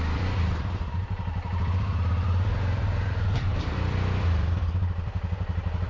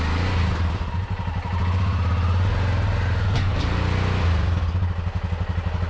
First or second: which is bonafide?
second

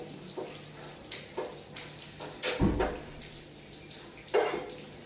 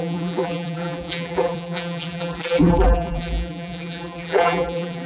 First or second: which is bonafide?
first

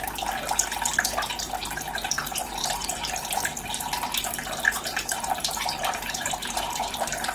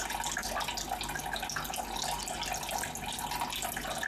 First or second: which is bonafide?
second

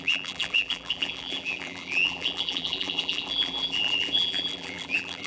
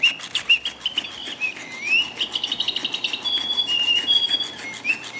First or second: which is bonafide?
second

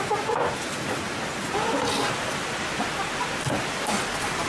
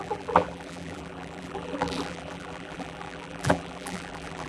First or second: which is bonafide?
first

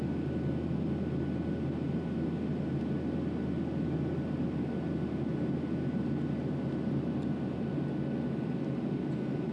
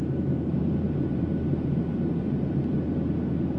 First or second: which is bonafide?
first